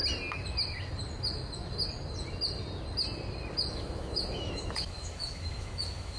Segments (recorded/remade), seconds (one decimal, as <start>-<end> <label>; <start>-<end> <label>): 0.0-3.7 recorded; 3.7-6.2 remade